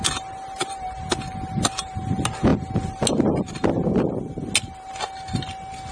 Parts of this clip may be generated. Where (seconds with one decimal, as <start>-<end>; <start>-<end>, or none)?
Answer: none